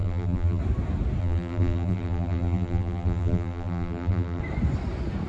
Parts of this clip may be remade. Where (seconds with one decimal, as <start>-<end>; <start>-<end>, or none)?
0.0-0.6; 1.2-4.4